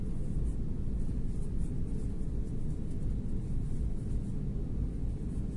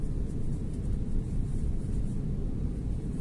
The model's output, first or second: second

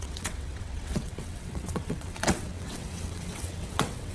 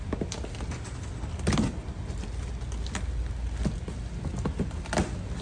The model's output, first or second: first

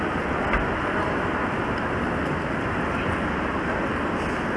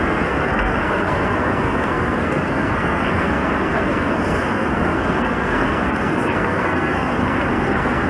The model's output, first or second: second